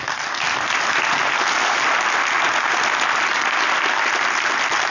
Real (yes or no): yes